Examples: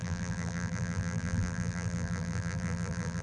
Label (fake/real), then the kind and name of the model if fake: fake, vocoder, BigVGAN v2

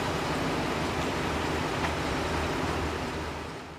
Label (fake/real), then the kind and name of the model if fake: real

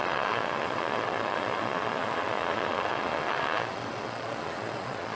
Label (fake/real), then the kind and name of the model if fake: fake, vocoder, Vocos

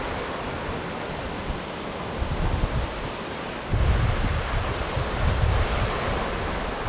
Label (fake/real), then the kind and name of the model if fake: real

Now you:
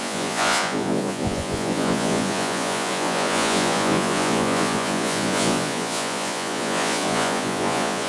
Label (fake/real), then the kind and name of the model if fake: fake, vocoder, Vocos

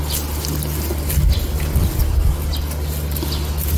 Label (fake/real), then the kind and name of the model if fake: real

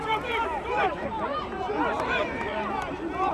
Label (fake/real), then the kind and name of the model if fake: real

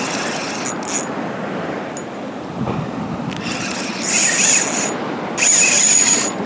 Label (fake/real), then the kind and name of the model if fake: real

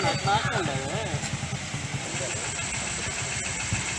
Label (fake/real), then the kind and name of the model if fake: real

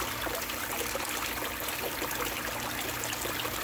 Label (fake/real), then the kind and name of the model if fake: real